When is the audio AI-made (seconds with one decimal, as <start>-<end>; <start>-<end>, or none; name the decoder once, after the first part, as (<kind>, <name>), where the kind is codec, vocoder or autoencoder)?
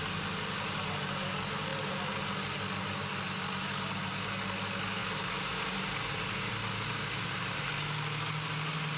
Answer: 5.0-7.7 (vocoder, BigVGAN v2)